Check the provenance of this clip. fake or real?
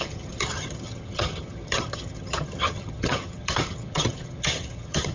fake